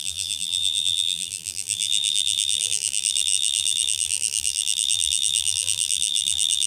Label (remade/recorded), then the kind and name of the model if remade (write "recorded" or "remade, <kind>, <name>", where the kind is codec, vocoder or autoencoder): remade, vocoder, BigVGAN v2